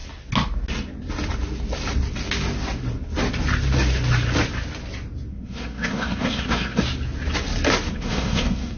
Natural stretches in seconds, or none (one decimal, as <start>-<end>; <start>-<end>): 0.0-5.3; 6.8-7.9